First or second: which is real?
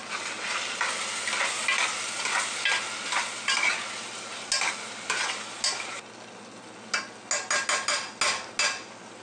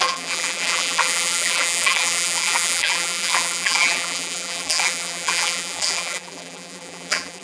first